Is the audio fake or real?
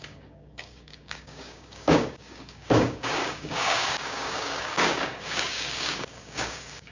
fake